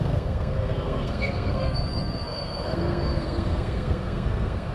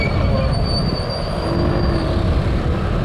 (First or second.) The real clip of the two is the second